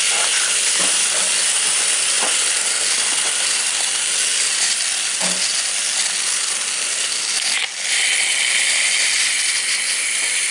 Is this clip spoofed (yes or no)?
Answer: no